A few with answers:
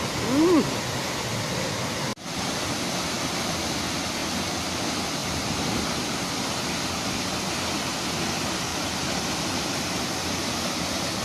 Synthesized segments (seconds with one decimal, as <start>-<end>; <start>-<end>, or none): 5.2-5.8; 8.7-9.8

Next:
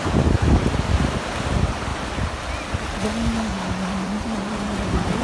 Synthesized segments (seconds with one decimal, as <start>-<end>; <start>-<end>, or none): 0.0-1.9; 3.5-5.2

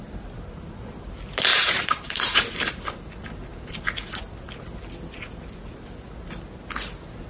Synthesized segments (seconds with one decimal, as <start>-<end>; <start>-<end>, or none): 1.5-2.4

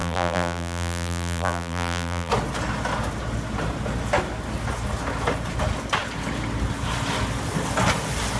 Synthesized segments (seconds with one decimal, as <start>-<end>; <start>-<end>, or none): 0.0-2.3

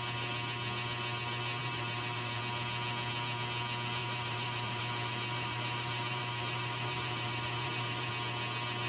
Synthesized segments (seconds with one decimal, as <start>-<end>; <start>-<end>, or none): 1.6-2.4; 4.0-8.1